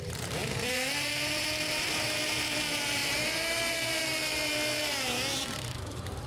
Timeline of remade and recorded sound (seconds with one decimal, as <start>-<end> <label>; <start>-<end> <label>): 0.0-6.3 remade